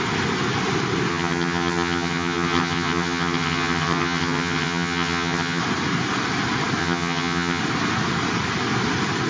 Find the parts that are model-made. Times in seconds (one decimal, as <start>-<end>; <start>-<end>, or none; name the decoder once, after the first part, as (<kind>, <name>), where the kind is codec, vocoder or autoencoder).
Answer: 1.1-5.6 (vocoder, HiFi-GAN); 6.8-7.6